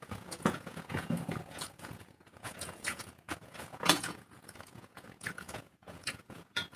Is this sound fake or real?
fake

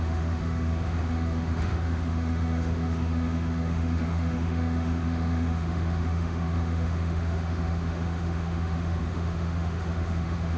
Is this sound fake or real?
fake